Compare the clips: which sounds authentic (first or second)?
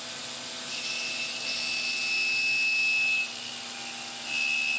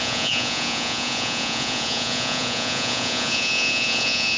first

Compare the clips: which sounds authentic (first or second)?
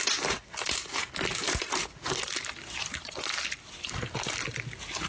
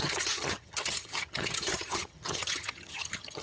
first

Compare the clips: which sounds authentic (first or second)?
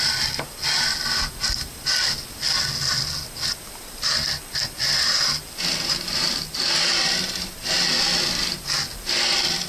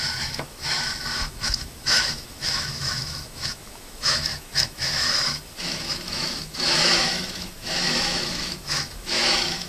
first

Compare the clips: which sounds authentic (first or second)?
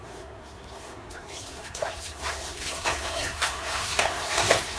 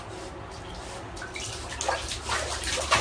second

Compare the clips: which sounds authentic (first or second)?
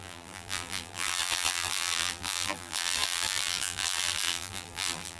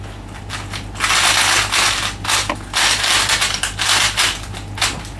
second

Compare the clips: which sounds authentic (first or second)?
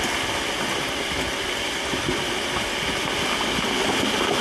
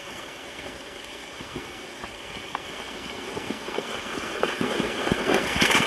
first